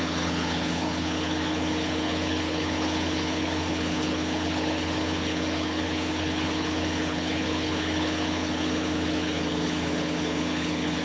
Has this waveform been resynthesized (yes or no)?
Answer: yes